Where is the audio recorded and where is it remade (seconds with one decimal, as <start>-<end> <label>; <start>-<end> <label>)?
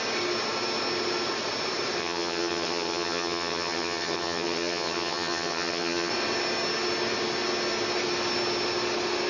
0.0-2.0 recorded; 2.0-6.1 remade; 6.1-9.3 recorded